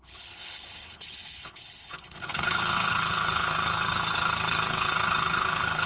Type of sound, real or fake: fake